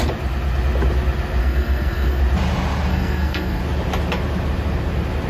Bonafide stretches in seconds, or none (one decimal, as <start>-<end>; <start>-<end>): 0.0-1.4; 2.2-2.9; 3.6-5.3